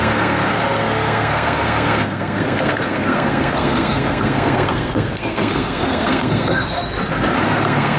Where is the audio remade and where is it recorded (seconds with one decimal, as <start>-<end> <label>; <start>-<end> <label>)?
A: 0.0-6.8 remade; 6.8-7.4 recorded; 7.4-8.0 remade